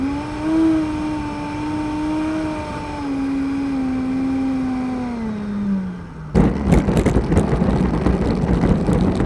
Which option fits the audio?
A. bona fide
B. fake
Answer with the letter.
A